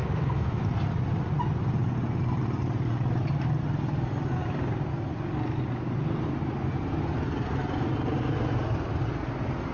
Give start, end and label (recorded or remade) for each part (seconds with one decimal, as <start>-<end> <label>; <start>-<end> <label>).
0.0-0.6 remade; 0.6-9.7 recorded